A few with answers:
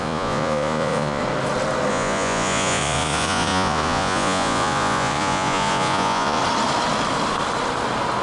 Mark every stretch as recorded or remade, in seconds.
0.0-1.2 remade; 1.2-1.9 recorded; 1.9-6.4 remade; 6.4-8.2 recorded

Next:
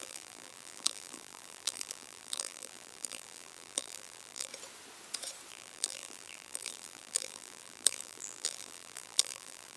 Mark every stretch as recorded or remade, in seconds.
0.0-4.5 remade; 4.5-5.5 recorded; 5.5-9.8 remade

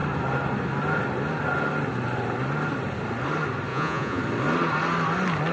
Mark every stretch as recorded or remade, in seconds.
0.0-3.7 recorded; 3.7-4.2 remade; 4.2-5.5 recorded

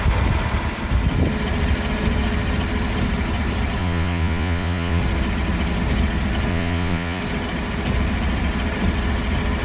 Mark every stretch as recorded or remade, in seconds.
0.0-3.8 recorded; 3.8-5.0 remade; 5.0-6.5 recorded; 6.5-7.2 remade; 7.2-9.6 recorded